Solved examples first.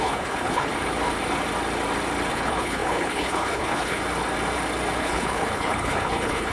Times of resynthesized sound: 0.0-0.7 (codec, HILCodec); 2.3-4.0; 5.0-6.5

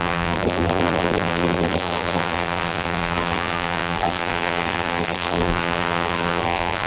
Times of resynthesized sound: 0.0-6.9 (vocoder, BigVGAN v2)

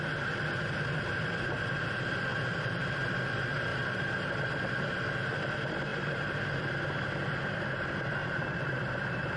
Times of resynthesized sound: 2.3-3.3 (vocoder, BigVGAN v2); 5.9-6.6; 8.2-9.4

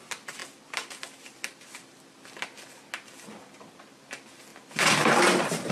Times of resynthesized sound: none

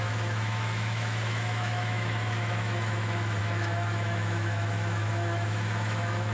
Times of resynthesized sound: 0.0-6.3 (autoencoder, DAC-VAE)